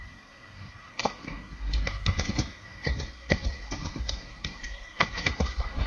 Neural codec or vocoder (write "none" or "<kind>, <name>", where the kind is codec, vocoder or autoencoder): codec, SNAC